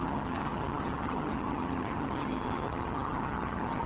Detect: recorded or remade remade